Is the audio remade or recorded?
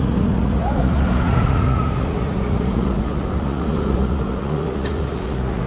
remade